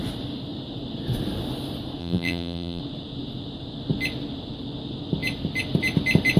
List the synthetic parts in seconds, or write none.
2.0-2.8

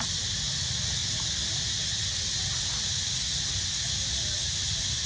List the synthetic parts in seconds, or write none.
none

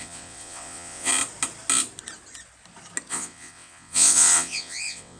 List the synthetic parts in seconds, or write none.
0.0-1.1; 3.1-5.2